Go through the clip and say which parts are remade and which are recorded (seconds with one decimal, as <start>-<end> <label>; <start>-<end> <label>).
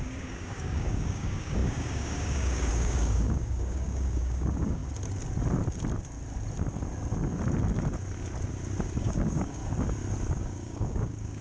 0.0-4.8 remade; 4.8-9.0 recorded; 9.0-9.6 remade; 9.6-10.3 recorded; 10.3-11.4 remade